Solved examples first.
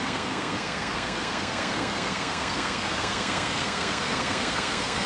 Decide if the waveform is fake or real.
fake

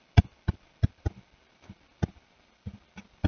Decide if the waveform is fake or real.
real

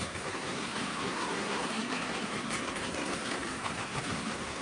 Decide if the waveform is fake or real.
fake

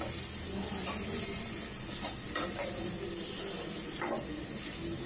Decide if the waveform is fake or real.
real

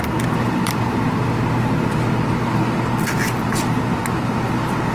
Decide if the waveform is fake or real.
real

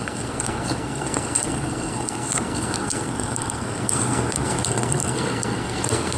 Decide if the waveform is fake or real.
fake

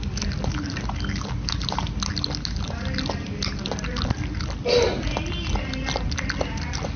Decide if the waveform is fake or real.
real